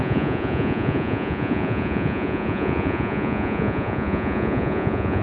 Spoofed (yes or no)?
yes